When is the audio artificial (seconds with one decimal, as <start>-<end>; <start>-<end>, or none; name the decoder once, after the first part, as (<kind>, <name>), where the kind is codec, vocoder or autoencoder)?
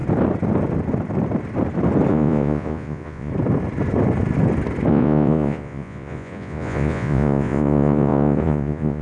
2.1-3.3 (vocoder, Vocos); 4.9-9.0